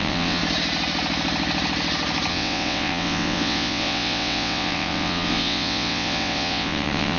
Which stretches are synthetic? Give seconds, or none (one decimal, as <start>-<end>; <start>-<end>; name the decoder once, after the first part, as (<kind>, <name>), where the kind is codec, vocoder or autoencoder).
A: 0.0-0.4 (vocoder, WaveNeXt); 2.3-7.2